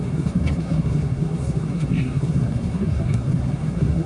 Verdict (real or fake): fake